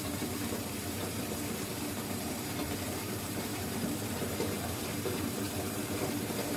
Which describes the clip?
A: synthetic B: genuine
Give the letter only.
A